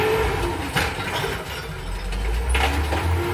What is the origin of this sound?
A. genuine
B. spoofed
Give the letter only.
A